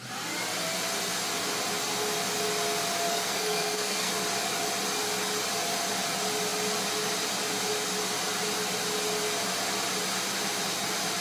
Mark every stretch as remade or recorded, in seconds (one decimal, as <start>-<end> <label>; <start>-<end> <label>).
0.0-3.1 recorded; 3.1-4.1 remade; 4.1-11.2 recorded